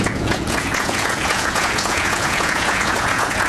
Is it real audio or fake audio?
fake